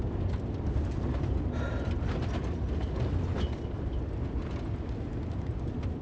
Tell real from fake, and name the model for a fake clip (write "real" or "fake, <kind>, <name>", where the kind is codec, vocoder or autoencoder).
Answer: real